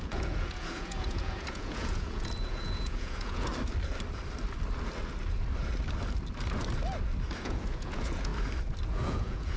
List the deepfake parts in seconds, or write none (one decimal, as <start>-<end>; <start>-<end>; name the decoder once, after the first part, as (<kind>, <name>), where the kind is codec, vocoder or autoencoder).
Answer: 0.0-3.5 (vocoder, Vocos); 7.4-8.3; 8.9-9.6